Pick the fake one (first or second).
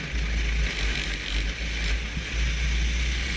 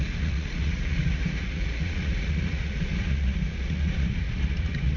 second